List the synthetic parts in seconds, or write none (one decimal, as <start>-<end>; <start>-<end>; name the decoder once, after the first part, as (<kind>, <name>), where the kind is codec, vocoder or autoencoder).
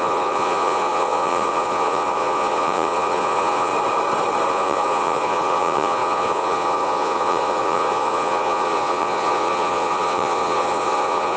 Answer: 0.0-3.7 (vocoder, Vocos); 4.5-11.4